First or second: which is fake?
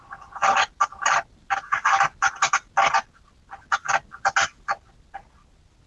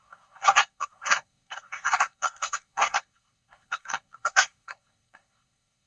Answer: second